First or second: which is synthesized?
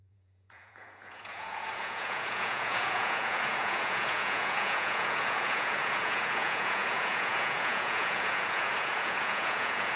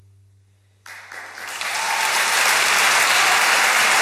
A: first